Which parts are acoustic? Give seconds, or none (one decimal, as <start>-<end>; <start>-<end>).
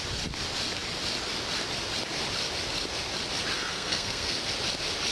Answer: 0.0-3.7; 4.5-5.1